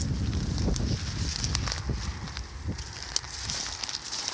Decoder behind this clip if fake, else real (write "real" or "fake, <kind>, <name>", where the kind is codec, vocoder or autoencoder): real